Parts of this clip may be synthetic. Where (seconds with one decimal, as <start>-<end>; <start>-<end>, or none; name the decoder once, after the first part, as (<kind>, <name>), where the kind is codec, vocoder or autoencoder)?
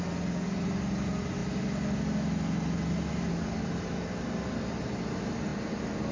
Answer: none